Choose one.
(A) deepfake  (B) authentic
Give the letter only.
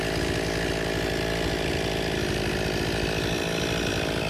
B